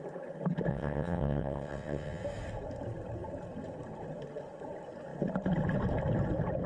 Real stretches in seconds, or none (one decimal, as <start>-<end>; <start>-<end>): 0.0-0.7; 2.2-6.7